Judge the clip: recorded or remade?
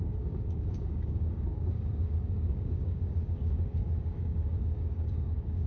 remade